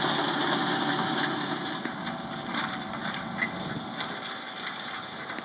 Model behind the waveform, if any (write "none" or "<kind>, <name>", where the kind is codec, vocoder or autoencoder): none